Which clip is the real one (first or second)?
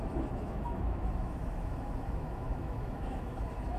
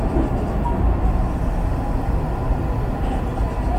second